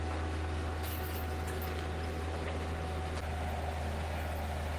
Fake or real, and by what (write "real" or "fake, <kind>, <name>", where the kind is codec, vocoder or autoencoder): real